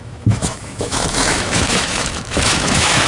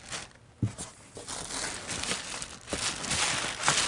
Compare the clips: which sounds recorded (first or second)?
second